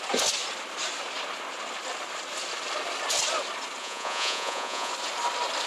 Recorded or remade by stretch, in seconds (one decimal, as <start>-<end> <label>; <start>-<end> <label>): 0.0-3.8 recorded; 3.8-4.9 remade; 4.9-5.7 recorded